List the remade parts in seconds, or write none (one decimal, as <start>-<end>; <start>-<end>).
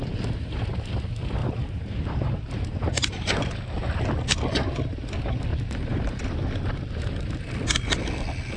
1.4-4.0; 5.5-6.2